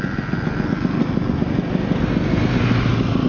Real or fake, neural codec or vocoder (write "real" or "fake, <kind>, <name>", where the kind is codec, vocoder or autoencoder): real